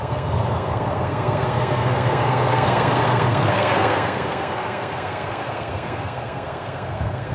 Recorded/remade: remade